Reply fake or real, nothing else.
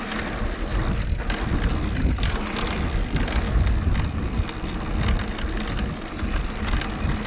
real